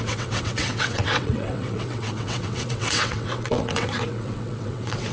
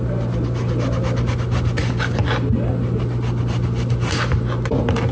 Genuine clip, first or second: second